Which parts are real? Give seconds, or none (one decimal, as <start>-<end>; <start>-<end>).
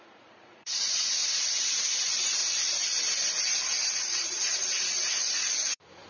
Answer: 1.2-2.0; 2.4-3.9